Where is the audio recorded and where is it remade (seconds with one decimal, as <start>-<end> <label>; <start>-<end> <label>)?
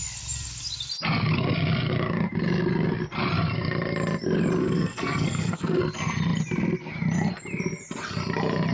0.0-4.6 recorded; 4.6-5.8 remade; 5.8-8.7 recorded